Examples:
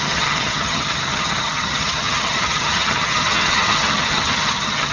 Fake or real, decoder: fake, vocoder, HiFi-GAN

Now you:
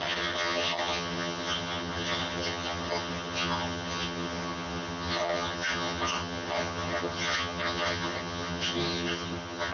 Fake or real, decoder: fake, vocoder, HiFi-GAN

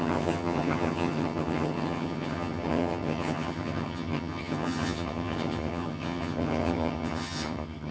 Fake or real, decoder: fake, vocoder, HiFi-GAN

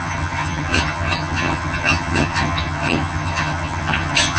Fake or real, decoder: fake, vocoder, HiFi-GAN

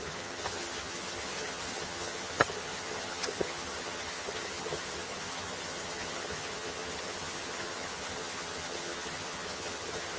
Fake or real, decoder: fake, vocoder, HiFi-GAN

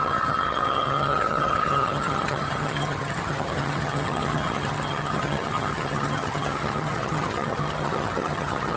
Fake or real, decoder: fake, vocoder, HiFi-GAN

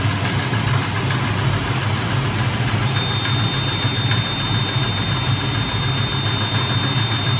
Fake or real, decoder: real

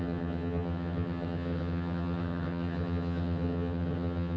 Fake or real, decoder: fake, vocoder, HiFi-GAN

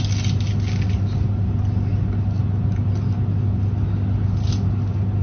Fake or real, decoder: real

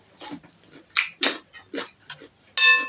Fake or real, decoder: real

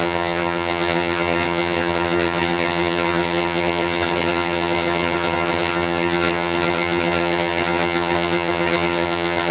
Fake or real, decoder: fake, vocoder, HiFi-GAN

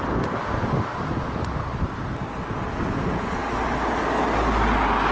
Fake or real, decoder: real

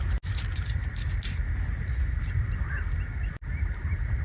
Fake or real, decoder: real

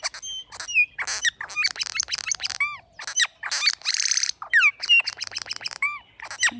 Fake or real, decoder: real